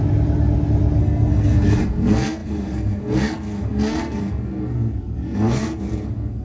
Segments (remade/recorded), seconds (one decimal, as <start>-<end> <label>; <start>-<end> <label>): 0.0-1.0 recorded; 1.0-6.4 remade